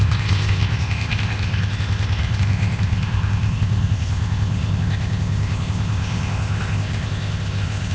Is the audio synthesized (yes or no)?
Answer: yes